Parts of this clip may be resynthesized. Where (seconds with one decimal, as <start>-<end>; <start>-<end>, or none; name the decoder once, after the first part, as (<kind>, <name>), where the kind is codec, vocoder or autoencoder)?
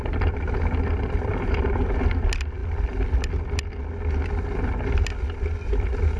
1.3-2.1 (vocoder, BigVGAN v2)